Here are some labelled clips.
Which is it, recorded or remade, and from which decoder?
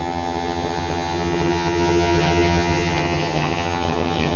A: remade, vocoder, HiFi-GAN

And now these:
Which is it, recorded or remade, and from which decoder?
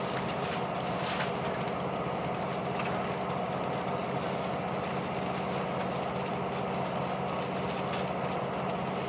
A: recorded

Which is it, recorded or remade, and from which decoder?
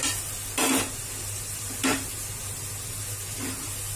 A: recorded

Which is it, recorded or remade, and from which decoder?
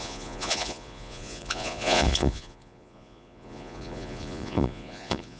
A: remade, vocoder, Vocos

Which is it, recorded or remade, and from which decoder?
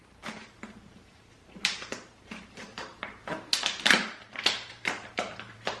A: remade, vocoder, BigVGAN v2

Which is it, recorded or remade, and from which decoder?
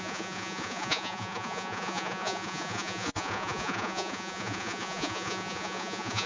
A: remade, vocoder, Vocos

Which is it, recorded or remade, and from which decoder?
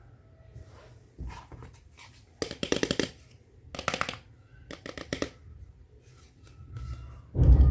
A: recorded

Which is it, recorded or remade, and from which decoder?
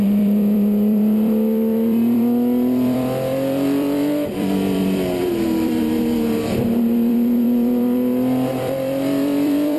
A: remade, vocoder, BigVGAN v2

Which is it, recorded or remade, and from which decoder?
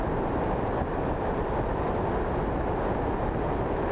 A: recorded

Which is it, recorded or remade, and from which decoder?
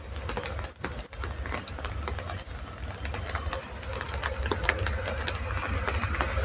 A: recorded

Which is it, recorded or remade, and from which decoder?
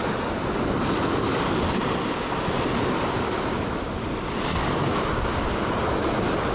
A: recorded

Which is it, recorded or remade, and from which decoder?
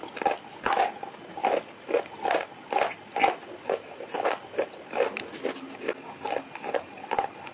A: recorded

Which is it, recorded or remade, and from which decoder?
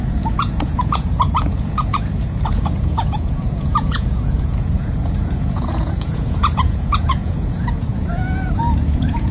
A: remade, vocoder, Vocos